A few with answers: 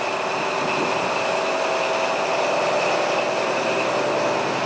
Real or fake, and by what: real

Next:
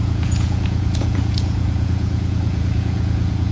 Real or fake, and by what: fake, vocoder, Vocos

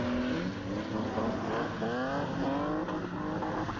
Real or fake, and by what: real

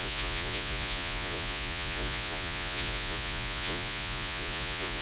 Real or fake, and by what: fake, vocoder, Vocos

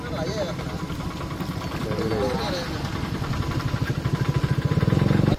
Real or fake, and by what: real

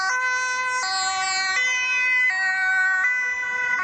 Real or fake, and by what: real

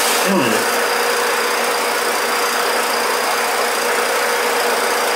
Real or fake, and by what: real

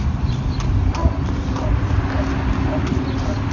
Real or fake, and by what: real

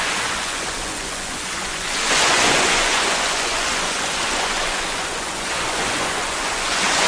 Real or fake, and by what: fake, vocoder, Vocos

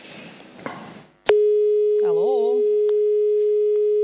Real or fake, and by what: real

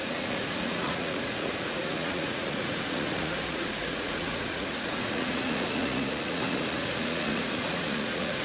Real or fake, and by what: fake, vocoder, Vocos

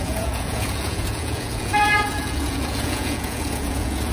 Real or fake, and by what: fake, vocoder, Vocos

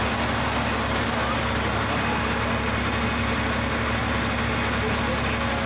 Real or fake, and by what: real